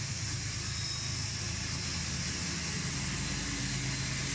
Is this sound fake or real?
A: real